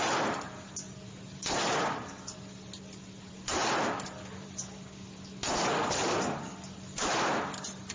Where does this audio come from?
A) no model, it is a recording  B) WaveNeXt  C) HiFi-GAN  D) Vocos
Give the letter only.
A